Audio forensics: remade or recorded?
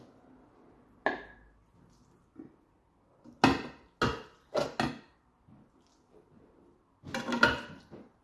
recorded